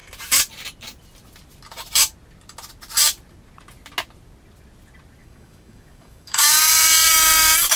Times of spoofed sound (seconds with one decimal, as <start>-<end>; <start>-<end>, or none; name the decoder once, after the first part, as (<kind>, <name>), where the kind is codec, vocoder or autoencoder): 5.2-6.7 (codec, DAC)